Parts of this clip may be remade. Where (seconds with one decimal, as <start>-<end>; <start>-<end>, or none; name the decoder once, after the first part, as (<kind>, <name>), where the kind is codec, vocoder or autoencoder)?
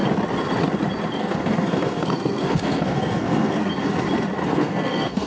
1.2-3.7 (codec, SNAC); 4.4-5.3